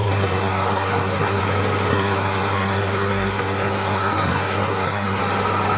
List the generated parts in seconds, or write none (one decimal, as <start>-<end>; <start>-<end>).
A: 0.0-1.4; 1.9-5.2